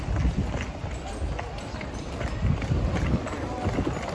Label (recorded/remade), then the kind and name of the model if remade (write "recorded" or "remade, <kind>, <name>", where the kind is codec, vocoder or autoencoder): recorded